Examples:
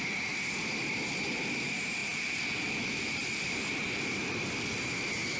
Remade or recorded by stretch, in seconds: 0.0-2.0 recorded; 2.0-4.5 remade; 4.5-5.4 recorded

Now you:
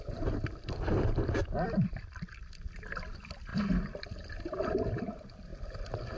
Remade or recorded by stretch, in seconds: 0.0-1.4 remade; 1.4-2.9 recorded; 2.9-3.5 remade; 3.5-4.3 recorded; 4.3-5.5 remade; 5.5-6.2 recorded

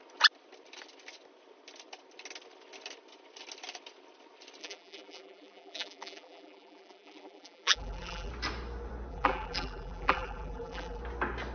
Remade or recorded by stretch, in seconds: 0.0-4.6 recorded; 4.6-8.3 remade; 8.3-9.1 recorded; 9.1-11.0 remade; 11.0-11.5 recorded

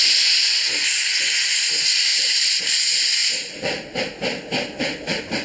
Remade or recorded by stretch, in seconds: 0.0-2.1 recorded; 2.1-2.6 remade; 2.6-3.2 recorded; 3.2-4.0 remade; 4.0-5.4 recorded

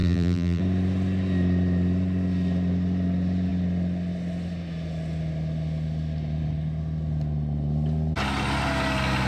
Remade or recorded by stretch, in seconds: 0.0-0.6 remade; 0.6-9.3 recorded

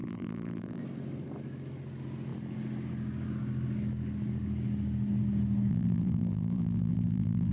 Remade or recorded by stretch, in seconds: 0.0-0.8 remade; 0.8-5.7 recorded; 5.7-7.5 remade

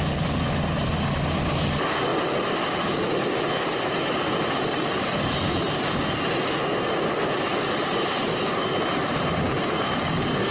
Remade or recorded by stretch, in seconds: 0.0-10.5 recorded